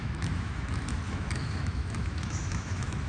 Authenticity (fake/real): fake